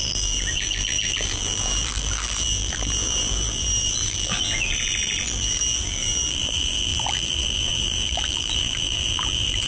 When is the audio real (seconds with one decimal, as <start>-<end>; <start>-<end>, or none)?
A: none